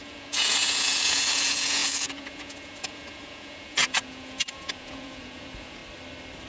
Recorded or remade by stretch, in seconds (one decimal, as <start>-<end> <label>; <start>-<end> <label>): 0.0-5.8 remade; 5.8-6.5 recorded